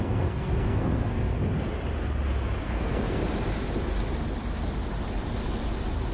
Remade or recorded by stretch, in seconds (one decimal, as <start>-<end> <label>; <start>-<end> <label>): 0.0-1.4 remade; 1.4-2.6 recorded; 2.6-3.2 remade; 3.2-6.1 recorded